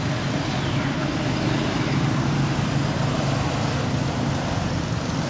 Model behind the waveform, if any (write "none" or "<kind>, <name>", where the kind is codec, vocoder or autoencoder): none